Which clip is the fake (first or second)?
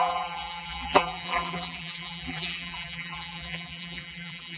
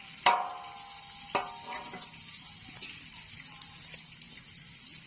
first